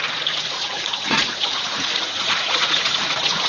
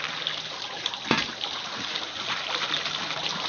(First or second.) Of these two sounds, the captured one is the second